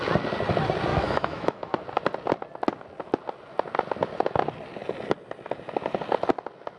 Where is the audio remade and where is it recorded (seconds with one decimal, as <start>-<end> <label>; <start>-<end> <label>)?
0.0-0.9 recorded; 0.9-1.8 remade; 1.8-6.8 recorded